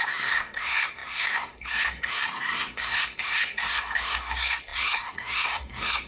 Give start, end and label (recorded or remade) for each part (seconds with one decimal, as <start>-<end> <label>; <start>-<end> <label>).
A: 0.0-6.1 remade